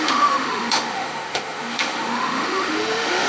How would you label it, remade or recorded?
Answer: remade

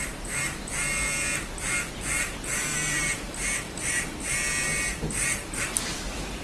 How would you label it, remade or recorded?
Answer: remade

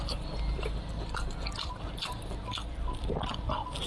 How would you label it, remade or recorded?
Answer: remade